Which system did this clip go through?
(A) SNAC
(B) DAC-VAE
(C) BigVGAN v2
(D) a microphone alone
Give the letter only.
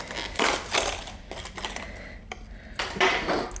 D